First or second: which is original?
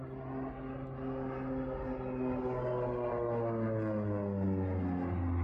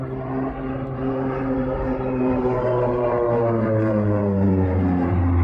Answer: first